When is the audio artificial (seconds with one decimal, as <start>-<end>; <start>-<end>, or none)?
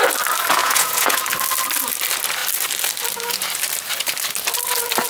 0.6-1.2